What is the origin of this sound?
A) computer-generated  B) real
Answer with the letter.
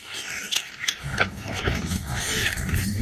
A